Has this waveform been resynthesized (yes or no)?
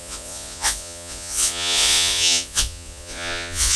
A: yes